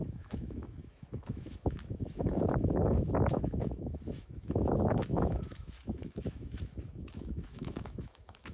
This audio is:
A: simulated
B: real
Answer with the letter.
A